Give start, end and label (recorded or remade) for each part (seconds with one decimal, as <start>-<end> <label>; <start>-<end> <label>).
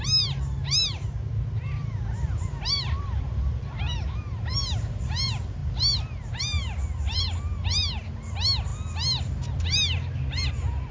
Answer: 0.0-1.8 recorded; 1.8-3.5 remade; 3.5-10.9 recorded